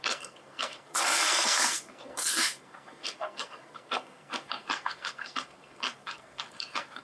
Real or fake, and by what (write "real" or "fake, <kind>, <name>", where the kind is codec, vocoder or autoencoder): fake, codec, SNAC